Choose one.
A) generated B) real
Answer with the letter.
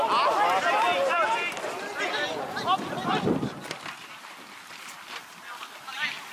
B